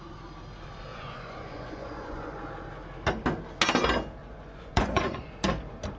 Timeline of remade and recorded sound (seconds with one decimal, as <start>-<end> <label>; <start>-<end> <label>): 0.0-0.9 recorded; 0.9-2.4 remade; 2.4-4.2 recorded; 4.2-5.3 remade; 5.3-6.0 recorded